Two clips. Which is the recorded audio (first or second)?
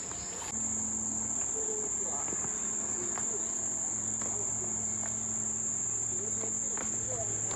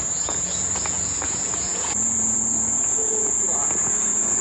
first